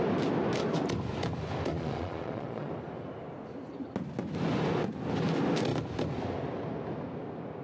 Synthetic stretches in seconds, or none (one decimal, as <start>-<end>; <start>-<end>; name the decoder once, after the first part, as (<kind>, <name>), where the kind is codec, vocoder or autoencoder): 1.7-2.7 (vocoder, Vocos)